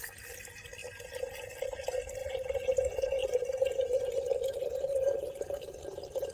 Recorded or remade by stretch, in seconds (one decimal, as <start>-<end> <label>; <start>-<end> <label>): 0.0-2.2 recorded; 2.2-2.8 remade; 2.8-6.3 recorded